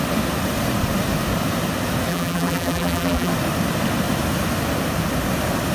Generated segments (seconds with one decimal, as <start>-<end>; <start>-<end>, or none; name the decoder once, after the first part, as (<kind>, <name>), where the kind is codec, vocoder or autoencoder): 2.1-3.3 (vocoder, BigVGAN v2)